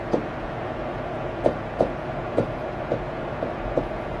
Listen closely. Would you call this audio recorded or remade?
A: remade